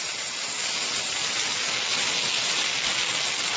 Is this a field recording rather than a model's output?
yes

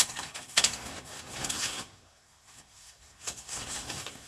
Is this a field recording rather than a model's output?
no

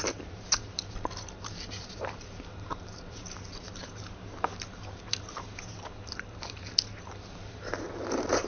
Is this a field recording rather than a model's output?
no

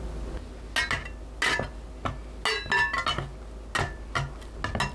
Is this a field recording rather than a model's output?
yes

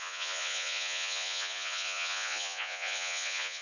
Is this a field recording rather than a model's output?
no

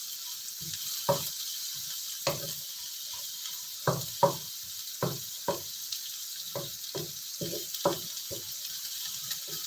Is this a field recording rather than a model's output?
yes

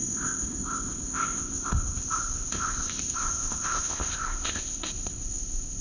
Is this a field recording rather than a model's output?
no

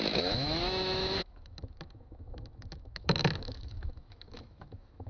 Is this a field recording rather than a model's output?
no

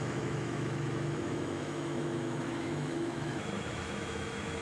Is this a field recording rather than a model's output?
no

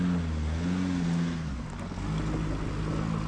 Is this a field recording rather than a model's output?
yes